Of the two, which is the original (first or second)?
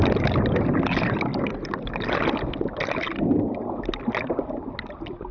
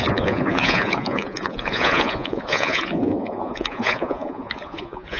first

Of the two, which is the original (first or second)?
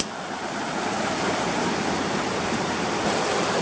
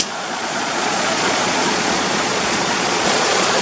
first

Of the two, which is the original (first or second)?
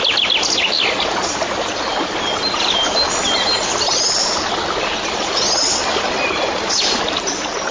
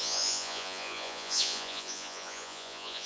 first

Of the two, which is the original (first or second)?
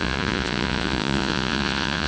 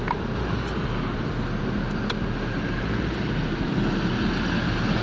second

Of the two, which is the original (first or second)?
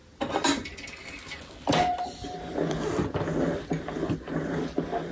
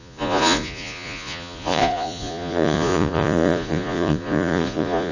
first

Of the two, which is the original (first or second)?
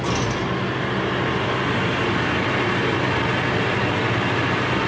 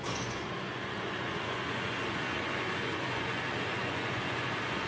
first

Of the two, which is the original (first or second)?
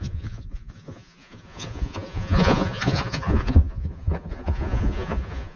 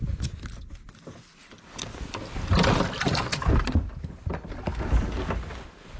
second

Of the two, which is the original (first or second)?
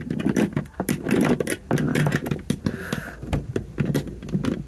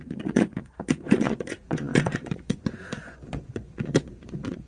first